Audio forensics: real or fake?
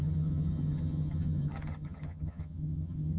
fake